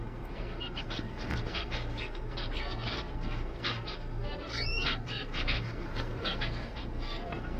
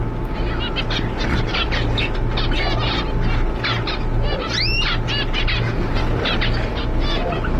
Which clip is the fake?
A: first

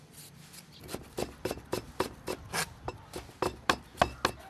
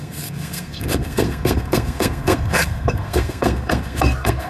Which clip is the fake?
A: second